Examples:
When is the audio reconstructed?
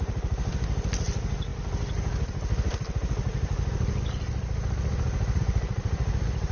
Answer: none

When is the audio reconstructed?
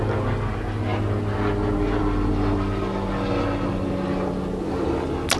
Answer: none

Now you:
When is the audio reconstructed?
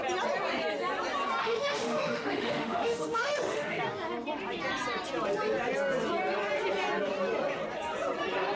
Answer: 1.4-3.8 (autoencoder, DAC-VAE)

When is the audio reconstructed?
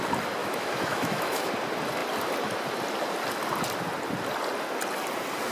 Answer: 0.4-1.5 (autoencoder, DAC-VAE)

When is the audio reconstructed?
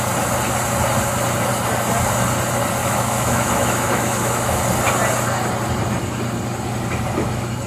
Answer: 2.8-4.6 (autoencoder, DAC-VAE)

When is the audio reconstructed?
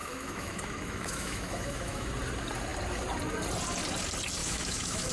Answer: 0.0-2.1 (autoencoder, DAC-VAE); 4.4-5.1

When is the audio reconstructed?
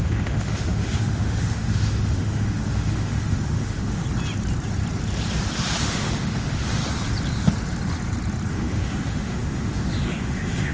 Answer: 0.0-4.0 (autoencoder, DAC-VAE); 5.8-6.8; 8.5-10.7